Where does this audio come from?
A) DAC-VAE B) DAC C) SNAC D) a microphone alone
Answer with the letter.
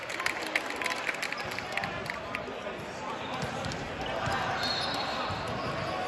D